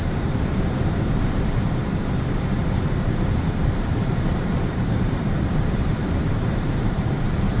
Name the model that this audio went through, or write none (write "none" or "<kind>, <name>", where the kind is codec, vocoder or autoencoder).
vocoder, BigVGAN v2